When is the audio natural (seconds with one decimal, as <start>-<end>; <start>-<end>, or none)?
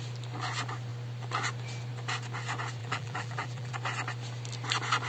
0.0-2.8; 3.7-5.1